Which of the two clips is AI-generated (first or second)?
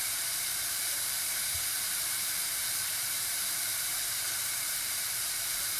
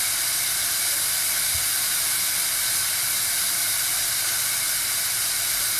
first